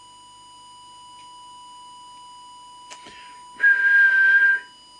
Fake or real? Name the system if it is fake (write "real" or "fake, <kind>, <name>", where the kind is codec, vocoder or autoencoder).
real